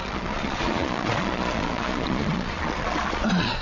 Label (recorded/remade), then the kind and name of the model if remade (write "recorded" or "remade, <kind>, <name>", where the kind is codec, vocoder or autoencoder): remade, vocoder, Vocos